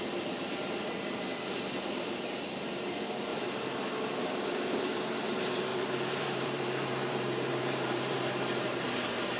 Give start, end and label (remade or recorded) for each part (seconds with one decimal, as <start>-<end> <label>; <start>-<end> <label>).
0.0-1.3 remade; 1.3-2.1 recorded; 2.1-3.3 remade; 3.3-4.2 recorded; 4.2-9.4 remade